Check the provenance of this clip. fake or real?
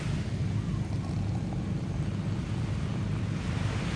real